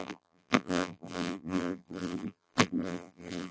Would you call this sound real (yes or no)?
no